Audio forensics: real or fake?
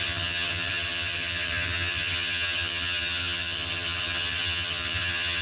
fake